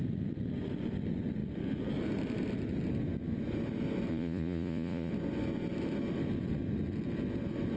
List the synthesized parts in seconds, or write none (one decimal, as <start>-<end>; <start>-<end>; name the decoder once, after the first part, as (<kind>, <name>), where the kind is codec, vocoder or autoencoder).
4.1-5.1 (vocoder, Vocos)